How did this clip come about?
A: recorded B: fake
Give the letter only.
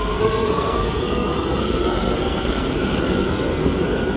B